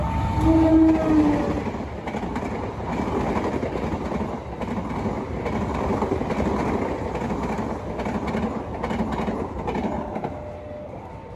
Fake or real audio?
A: real